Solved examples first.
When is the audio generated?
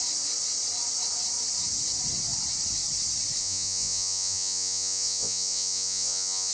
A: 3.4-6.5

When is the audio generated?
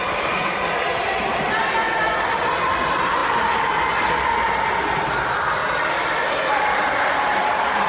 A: none